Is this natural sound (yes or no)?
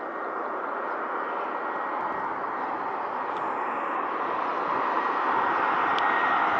yes